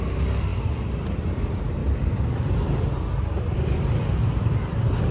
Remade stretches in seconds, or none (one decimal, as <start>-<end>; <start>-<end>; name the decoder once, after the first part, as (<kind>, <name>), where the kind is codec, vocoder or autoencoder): 0.0-0.5 (vocoder, BigVGAN v2); 1.3-5.1